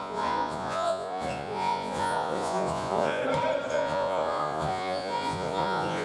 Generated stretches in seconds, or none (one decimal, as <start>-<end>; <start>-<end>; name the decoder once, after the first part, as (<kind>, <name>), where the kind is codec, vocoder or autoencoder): 0.0-3.2 (vocoder, Vocos); 3.7-6.0